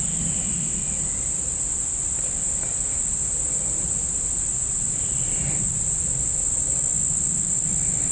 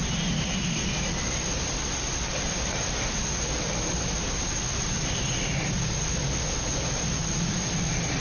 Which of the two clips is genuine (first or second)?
second